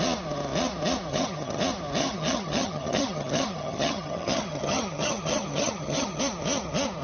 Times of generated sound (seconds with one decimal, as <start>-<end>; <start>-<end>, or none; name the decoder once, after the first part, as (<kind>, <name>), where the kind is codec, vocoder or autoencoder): 1.1-1.6 (vocoder, HiFi-GAN); 2.0-6.2